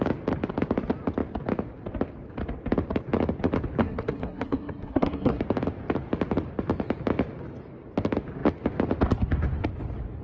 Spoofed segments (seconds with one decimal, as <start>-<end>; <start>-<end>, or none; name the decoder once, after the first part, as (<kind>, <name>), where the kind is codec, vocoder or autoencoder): 3.8-5.4 (codec, SNAC)